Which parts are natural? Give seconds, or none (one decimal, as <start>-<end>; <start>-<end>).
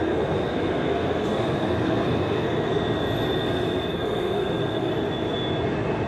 2.7-3.9; 4.9-6.1